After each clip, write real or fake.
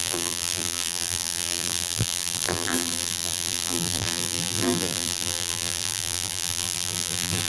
fake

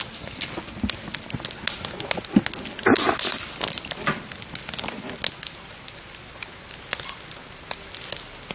real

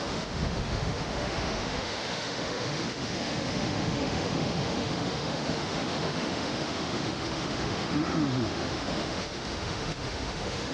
fake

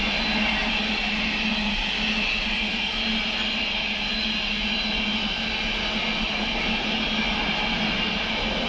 real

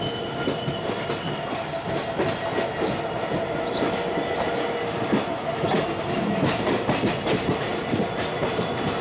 real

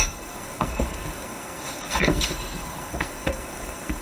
fake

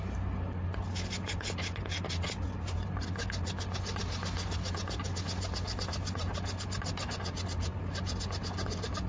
real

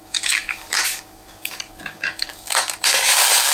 fake